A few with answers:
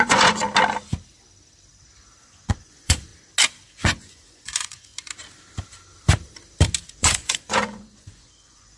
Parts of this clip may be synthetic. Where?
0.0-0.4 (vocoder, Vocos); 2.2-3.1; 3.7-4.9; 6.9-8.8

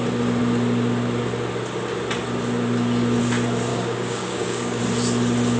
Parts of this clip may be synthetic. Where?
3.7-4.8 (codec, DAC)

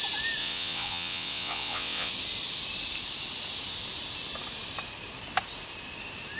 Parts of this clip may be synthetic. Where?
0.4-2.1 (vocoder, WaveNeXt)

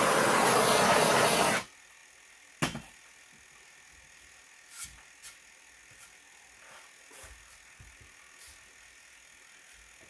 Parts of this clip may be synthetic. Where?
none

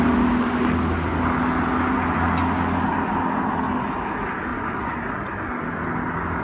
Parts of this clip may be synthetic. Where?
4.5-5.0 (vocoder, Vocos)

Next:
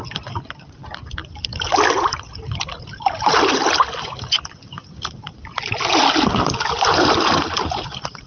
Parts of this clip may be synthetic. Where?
none